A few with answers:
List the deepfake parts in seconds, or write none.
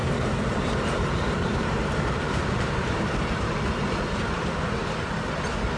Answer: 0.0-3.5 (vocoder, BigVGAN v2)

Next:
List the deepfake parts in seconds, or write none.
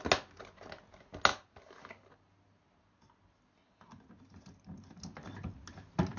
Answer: none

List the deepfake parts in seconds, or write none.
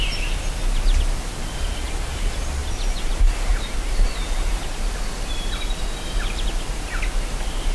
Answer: 2.6-3.1 (vocoder, BigVGAN v2); 3.5-4.1